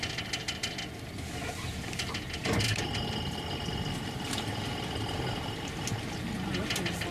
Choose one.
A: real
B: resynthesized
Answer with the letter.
A